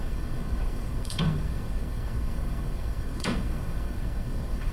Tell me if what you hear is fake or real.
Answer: fake